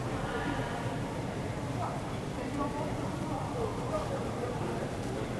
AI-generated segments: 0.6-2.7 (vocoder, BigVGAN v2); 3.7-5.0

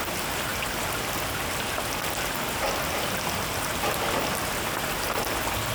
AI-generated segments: none

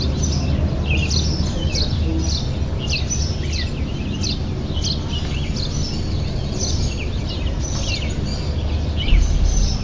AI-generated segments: none

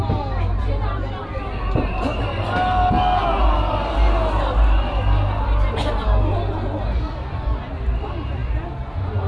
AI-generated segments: 0.6-2.2 (vocoder, BigVGAN v2)